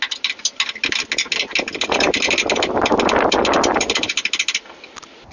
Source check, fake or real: real